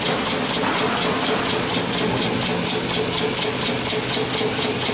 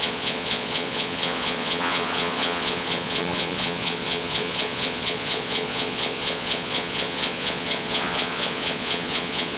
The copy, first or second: second